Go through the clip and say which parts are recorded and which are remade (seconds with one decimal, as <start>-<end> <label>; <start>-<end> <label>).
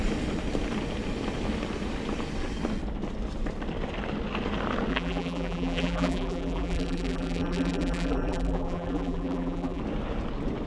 0.0-4.9 recorded; 4.9-9.8 remade; 9.8-10.7 recorded